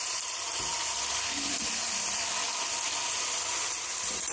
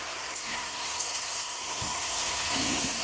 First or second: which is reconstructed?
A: second